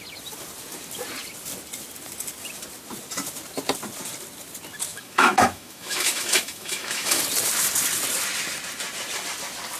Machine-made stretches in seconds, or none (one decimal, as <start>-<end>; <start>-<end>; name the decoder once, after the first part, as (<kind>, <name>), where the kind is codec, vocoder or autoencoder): 4.9-7.2 (autoencoder, DAC-VAE)